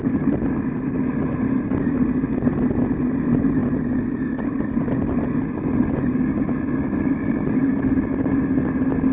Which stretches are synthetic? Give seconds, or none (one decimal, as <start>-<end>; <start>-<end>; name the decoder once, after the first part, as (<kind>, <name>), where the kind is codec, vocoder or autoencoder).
none